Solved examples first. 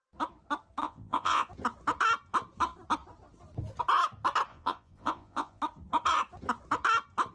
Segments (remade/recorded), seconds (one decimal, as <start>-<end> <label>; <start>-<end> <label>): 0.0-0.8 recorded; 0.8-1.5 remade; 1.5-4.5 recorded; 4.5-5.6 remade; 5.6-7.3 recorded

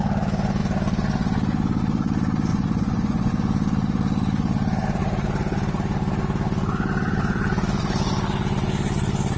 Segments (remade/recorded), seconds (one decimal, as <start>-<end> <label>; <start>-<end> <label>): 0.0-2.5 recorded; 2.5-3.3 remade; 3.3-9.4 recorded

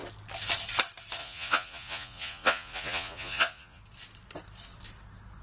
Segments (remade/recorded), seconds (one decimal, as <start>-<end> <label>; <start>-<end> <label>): 0.0-1.2 recorded; 1.2-3.8 remade; 3.8-5.4 recorded

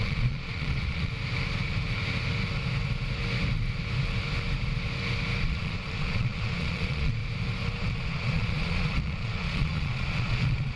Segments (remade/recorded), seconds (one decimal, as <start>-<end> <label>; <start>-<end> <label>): 0.0-1.1 remade; 1.1-5.4 recorded; 5.4-7.2 remade; 7.2-7.8 recorded; 7.8-10.8 remade

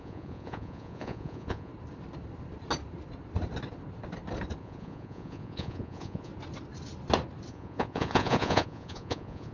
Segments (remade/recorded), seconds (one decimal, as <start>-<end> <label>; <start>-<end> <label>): 0.0-1.7 remade; 1.7-4.6 recorded; 4.6-6.3 remade; 6.3-7.5 recorded; 7.5-9.5 remade

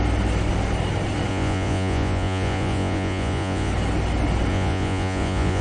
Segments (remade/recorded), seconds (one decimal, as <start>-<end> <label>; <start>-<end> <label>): 0.0-1.3 recorded; 1.3-3.7 remade; 3.7-4.5 recorded; 4.5-5.6 remade